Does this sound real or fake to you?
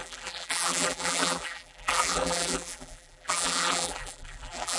fake